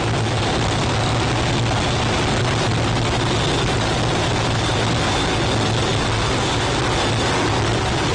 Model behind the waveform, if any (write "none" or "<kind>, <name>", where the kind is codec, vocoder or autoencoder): none